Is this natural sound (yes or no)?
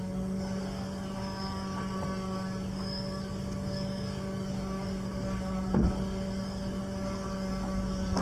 no